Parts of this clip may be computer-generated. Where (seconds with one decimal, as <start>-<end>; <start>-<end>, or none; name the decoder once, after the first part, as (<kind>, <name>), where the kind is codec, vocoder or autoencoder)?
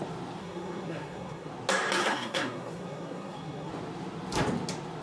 0.4-1.5 (codec, SNAC); 2.0-3.7